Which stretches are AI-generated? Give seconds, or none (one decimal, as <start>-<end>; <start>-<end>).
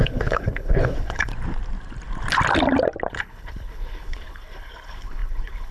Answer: 0.0-1.3; 3.1-5.7